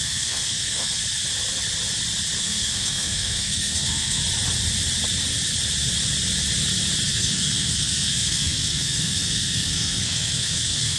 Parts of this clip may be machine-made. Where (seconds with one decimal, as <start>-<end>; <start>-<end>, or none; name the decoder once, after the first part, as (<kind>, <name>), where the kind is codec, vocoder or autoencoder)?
0.0-1.0 (codec, SNAC); 2.4-4.2; 7.1-11.0